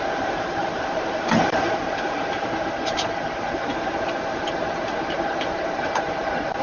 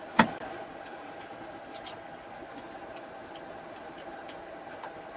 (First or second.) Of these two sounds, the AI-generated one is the first